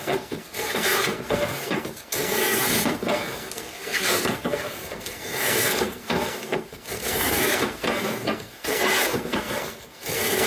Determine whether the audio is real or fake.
fake